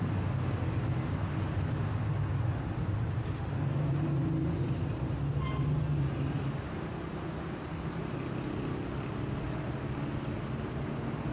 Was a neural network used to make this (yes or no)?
no